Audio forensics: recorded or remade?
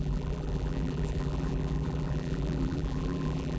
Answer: remade